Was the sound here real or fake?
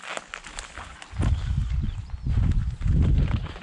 real